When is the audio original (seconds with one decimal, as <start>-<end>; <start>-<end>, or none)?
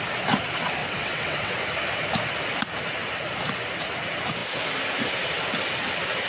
0.0-0.8; 1.6-6.3